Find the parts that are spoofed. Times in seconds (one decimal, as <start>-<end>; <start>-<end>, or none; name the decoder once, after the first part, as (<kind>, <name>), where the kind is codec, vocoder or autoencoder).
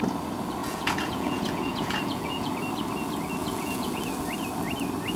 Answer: 0.6-2.5 (vocoder, Vocos); 3.4-4.0